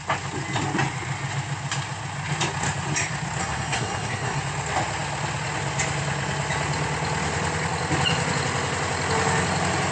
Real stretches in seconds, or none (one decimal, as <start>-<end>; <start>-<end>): 0.0-3.4; 4.4-9.9